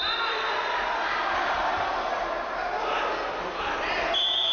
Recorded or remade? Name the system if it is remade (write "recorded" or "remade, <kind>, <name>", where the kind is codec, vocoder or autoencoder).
recorded